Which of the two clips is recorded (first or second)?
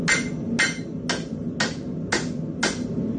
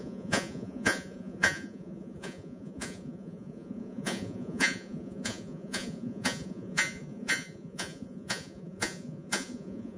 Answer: first